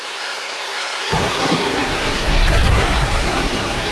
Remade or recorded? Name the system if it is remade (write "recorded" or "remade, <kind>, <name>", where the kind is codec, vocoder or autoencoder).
remade, codec, SNAC